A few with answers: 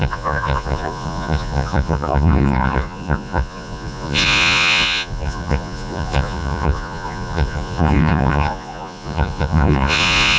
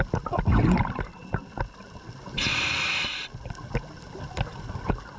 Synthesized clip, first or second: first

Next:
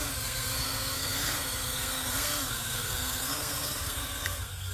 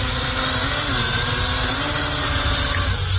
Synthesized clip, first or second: first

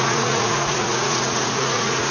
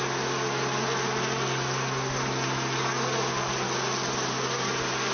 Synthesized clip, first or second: first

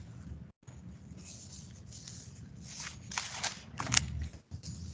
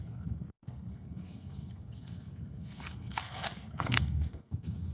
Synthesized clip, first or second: second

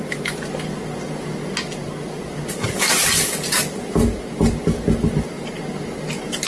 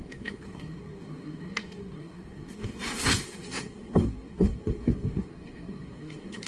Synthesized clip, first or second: second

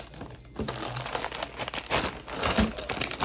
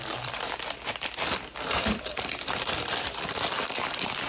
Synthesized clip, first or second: second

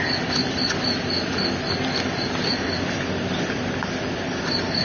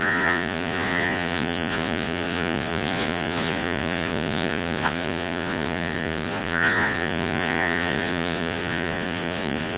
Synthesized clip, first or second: second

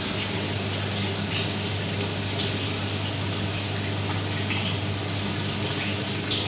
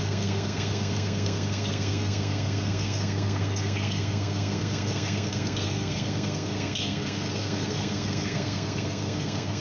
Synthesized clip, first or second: second